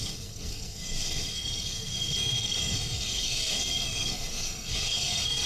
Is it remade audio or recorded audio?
remade